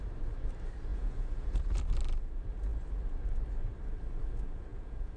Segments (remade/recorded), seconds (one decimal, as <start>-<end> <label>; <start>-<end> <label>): 0.0-0.9 recorded; 0.9-1.8 remade; 1.8-4.7 recorded; 4.7-5.2 remade